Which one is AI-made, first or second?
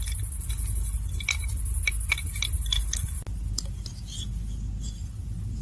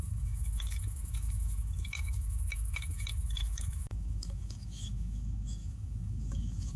second